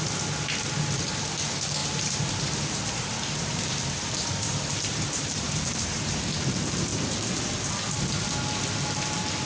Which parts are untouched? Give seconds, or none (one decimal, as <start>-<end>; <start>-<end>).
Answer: 0.0-1.8; 6.2-6.9; 7.7-9.5